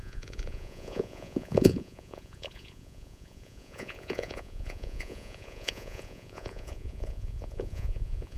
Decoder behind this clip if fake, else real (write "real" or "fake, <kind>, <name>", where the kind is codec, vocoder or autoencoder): fake, vocoder, Vocos